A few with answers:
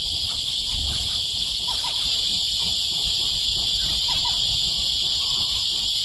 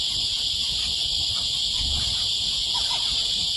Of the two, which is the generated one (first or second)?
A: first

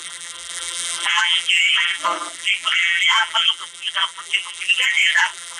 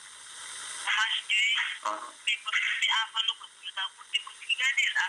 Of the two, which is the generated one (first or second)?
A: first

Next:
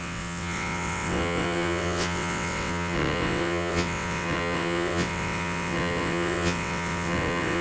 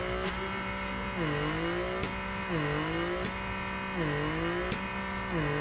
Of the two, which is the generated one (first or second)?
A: first